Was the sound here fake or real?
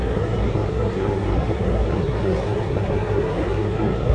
fake